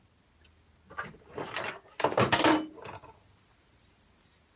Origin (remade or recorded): recorded